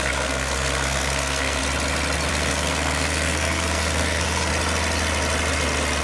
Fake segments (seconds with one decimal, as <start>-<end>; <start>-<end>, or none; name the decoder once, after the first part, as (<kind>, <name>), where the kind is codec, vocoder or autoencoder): 0.0-1.6 (codec, SNAC); 2.3-4.5